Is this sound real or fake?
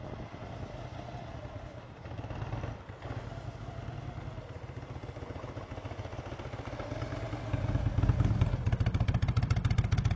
real